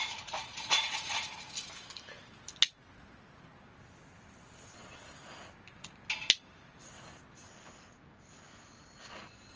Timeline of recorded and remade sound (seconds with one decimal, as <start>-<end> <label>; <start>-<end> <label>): 0.0-1.1 remade; 1.1-9.6 recorded